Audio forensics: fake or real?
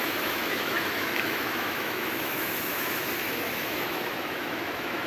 fake